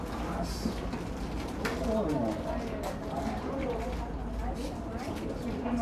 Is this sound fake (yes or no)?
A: no